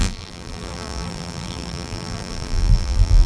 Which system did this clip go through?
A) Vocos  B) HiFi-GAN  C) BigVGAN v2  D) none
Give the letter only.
C